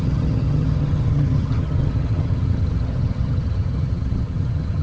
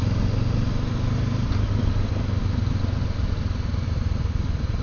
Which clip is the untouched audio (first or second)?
second